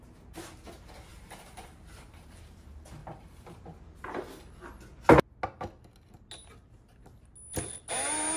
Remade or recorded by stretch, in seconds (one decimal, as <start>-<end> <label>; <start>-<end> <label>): 0.0-1.1 recorded; 1.1-2.4 remade; 2.4-3.0 recorded; 3.0-3.6 remade; 3.6-8.4 recorded

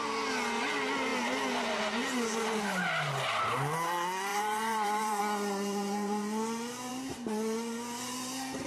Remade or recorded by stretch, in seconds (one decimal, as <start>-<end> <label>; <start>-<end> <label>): 0.0-4.3 recorded; 4.3-5.2 remade; 5.2-8.7 recorded

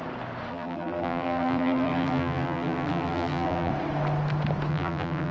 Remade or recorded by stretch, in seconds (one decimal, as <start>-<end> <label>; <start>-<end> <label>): 0.0-0.5 recorded; 0.5-3.7 remade; 3.7-4.7 recorded; 4.7-5.3 remade